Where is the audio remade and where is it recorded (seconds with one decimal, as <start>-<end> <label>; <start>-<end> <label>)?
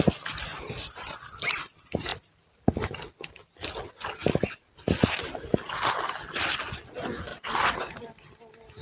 0.0-0.5 recorded; 0.5-1.0 remade; 1.0-2.1 recorded; 2.1-3.0 remade; 3.0-7.3 recorded; 7.3-8.0 remade; 8.0-8.8 recorded